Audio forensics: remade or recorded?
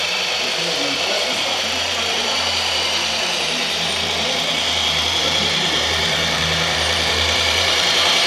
remade